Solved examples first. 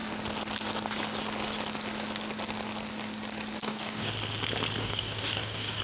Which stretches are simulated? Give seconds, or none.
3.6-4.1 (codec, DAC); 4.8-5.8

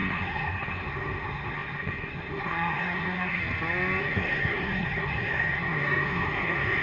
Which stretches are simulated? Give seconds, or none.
0.0-3.4 (codec, SNAC); 4.0-6.8

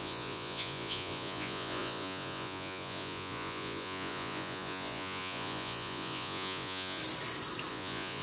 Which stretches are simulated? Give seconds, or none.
0.0-7.0 (vocoder, Vocos); 7.7-8.2

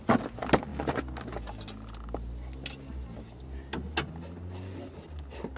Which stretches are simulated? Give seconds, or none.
none

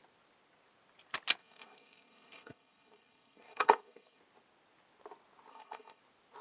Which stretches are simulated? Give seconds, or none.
1.4-4.2 (codec, SNAC); 5.5-6.0

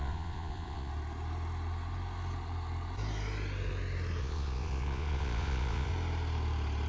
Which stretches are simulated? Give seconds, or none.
0.0-0.9 (vocoder, Vocos); 4.2-5.9

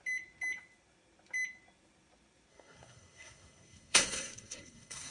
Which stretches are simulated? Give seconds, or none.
2.5-5.1 (codec, SNAC)